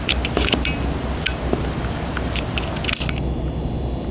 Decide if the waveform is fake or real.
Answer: real